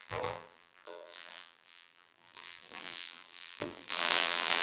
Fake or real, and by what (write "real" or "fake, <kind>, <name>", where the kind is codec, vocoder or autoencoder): fake, vocoder, BigVGAN v2